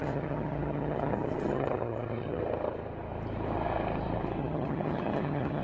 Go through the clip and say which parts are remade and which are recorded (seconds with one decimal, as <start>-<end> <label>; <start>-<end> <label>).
0.0-2.4 remade; 2.4-4.4 recorded; 4.4-5.6 remade